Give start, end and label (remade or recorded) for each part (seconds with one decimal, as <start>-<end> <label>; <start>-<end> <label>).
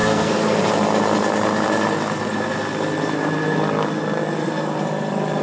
0.0-0.6 remade; 0.6-5.4 recorded